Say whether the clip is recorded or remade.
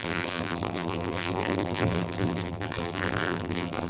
remade